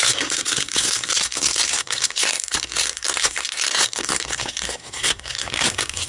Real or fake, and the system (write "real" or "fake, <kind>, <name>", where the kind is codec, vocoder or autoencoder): fake, codec, SNAC